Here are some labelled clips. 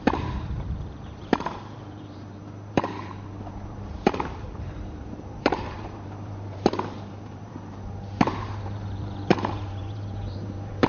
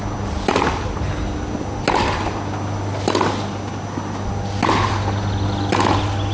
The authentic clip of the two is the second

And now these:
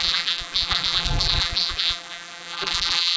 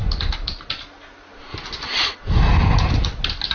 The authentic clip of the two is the second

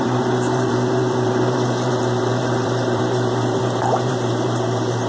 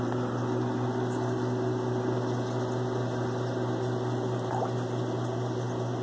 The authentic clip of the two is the second